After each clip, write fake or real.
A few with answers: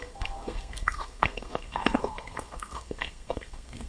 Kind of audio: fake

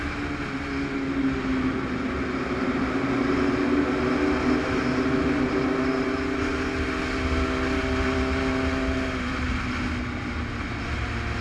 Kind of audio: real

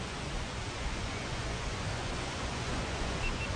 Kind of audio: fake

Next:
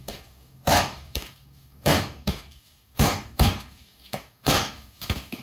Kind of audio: fake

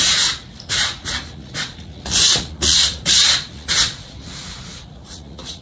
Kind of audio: fake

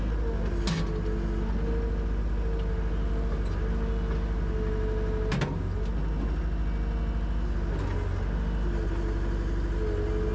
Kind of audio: real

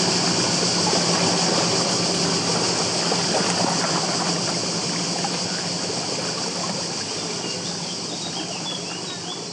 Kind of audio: real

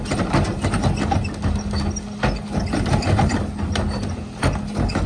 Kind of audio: real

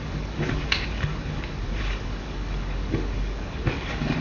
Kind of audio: fake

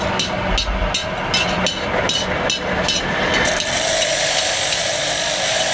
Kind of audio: real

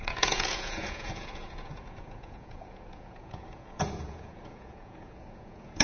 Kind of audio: fake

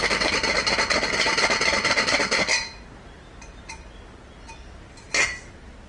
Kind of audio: real